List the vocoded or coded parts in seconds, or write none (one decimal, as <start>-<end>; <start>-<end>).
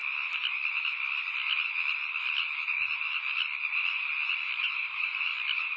4.6-5.2